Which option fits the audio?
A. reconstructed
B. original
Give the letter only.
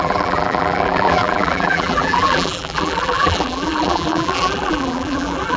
A